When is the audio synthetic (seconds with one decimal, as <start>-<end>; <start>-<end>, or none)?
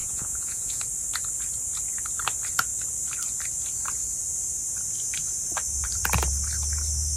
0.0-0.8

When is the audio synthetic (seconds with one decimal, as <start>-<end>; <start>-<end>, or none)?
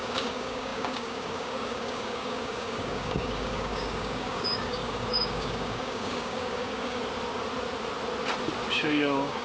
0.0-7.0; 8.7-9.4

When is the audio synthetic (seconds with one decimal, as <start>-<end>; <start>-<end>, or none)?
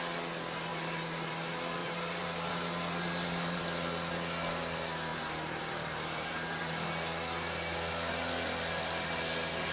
0.7-1.3; 1.8-3.6; 5.1-6.6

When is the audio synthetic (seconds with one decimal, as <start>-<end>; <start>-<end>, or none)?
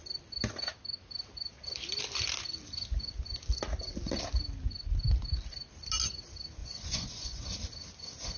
6.6-7.4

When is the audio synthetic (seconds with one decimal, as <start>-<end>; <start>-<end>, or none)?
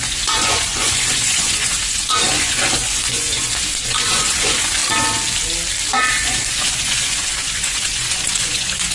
0.0-4.8; 6.1-8.9